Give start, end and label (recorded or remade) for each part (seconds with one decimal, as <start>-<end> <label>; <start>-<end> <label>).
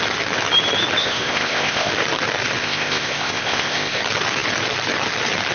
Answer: 0.0-1.0 recorded; 1.0-1.9 remade; 1.9-2.6 recorded; 2.6-4.0 remade; 4.0-5.5 recorded